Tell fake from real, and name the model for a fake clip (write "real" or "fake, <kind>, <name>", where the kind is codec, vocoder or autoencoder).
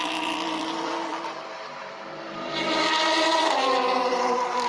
fake, vocoder, BigVGAN v2